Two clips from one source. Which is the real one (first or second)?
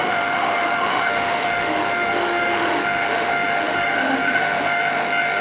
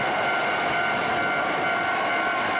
second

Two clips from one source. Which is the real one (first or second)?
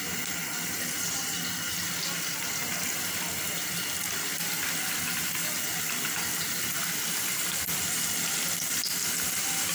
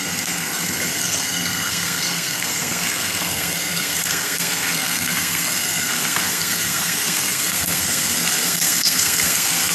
first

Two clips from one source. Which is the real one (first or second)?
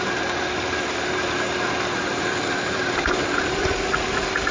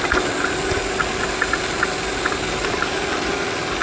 second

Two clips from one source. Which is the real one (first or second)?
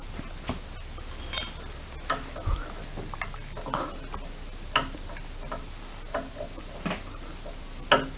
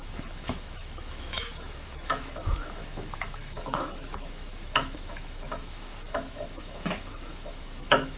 first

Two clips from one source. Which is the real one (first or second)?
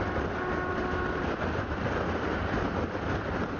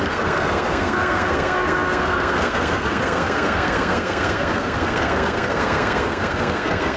first